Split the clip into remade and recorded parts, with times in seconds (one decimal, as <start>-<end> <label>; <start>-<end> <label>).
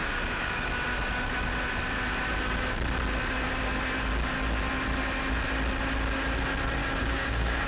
0.0-0.7 remade; 0.7-6.8 recorded; 6.8-7.7 remade